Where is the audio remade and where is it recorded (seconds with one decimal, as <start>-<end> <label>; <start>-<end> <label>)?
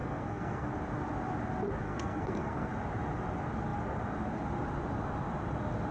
0.0-0.7 remade; 0.7-1.8 recorded; 1.8-2.7 remade; 2.7-5.9 recorded